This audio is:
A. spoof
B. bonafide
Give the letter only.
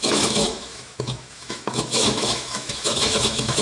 A